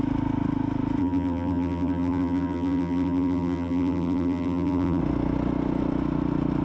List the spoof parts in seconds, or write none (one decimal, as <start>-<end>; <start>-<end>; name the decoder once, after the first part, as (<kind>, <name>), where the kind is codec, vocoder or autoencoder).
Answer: 1.0-5.0 (vocoder, BigVGAN v2)